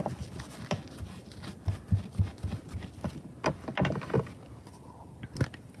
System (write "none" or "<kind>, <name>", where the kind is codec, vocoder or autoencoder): none